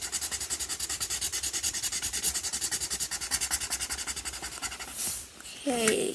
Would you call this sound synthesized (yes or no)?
no